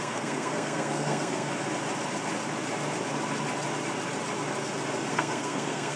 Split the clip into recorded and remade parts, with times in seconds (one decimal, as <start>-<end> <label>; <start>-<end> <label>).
0.0-1.5 remade; 1.5-5.1 recorded; 5.1-6.0 remade